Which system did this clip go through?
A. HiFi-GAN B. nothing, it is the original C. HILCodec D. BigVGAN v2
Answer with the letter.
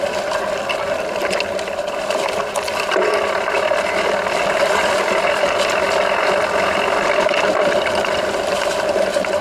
B